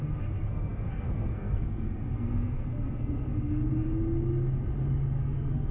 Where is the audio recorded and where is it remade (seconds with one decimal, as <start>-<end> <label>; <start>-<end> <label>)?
0.0-3.7 remade; 3.7-5.1 recorded; 5.1-5.7 remade